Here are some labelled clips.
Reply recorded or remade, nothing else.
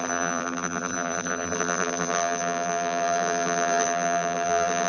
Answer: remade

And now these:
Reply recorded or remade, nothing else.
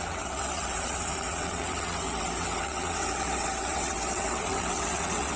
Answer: remade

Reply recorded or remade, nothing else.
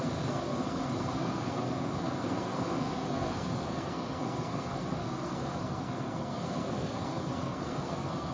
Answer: remade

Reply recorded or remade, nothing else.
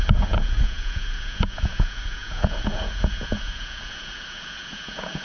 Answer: remade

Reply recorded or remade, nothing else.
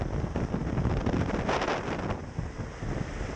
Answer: recorded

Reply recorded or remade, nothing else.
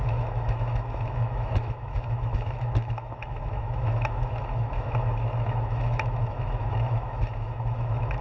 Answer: remade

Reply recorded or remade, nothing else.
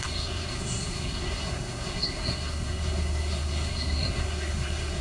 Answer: remade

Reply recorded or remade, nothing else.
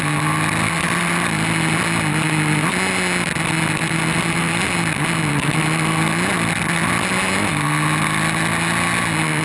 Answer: recorded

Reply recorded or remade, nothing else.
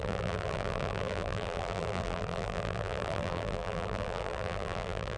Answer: remade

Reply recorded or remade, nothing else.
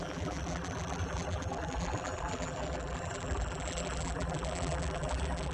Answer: remade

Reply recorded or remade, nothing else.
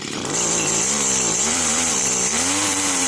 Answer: remade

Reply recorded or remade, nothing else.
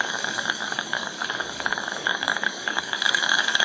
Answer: remade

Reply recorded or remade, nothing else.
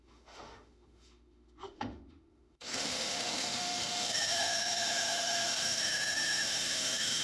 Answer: remade